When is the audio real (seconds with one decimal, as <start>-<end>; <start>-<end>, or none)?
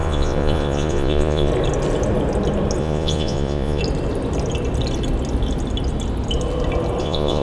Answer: 1.5-2.8; 3.8-7.0